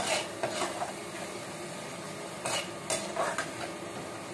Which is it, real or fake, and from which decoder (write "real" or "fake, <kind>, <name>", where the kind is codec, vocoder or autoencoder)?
real